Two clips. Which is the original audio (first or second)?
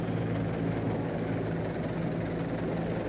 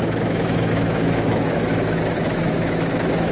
first